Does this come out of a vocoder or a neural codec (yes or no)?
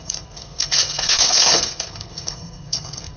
yes